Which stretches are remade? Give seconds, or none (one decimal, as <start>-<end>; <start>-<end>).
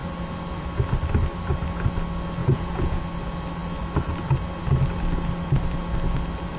2.4-3.0